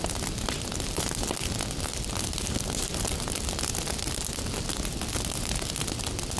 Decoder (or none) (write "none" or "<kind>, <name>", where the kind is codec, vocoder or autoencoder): none